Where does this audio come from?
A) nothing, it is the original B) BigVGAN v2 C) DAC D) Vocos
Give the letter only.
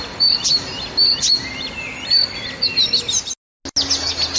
A